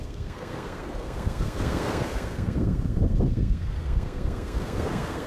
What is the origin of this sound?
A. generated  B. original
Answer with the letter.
A